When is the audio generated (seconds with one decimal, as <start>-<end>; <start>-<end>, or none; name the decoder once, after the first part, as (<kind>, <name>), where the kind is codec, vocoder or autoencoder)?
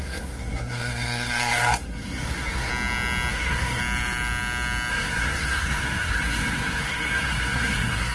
0.0-2.7 (codec, SNAC); 3.3-3.8; 4.9-8.1